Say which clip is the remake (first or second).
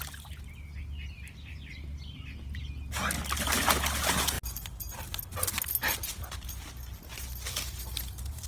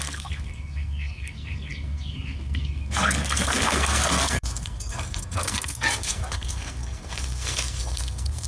second